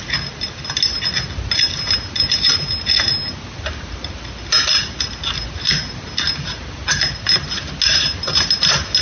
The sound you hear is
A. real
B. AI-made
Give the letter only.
A